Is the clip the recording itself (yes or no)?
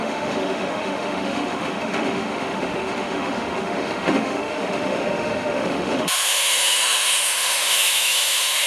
no